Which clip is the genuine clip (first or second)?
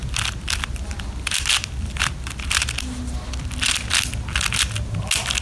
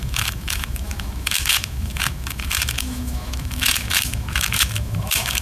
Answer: first